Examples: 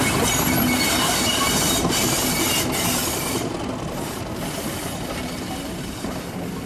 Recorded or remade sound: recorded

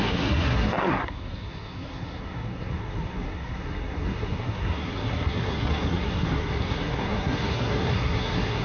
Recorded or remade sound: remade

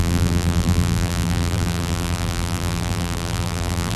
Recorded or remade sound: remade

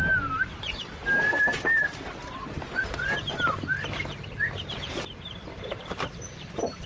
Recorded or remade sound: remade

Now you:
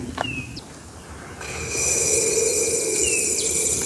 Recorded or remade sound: recorded